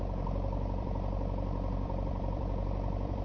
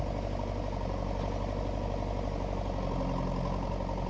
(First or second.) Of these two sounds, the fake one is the first